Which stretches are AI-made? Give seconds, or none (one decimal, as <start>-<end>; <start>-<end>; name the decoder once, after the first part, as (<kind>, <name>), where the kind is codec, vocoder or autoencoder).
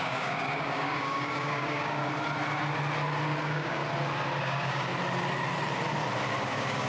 0.0-2.0 (codec, DAC); 3.4-3.8; 4.4-4.9; 6.4-6.9